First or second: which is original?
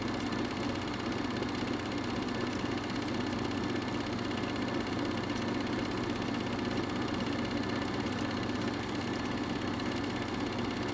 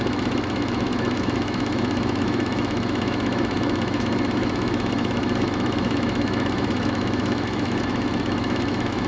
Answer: first